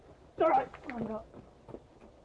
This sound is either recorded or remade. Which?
recorded